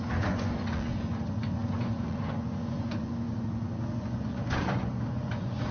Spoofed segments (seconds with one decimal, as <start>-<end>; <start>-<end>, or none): 0.0-5.7